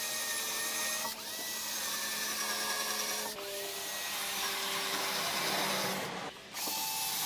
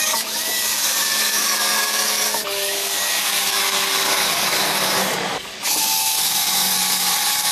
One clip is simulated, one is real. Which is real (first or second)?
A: first